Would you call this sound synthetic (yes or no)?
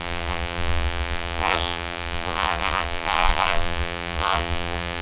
yes